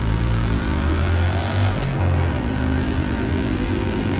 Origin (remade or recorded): remade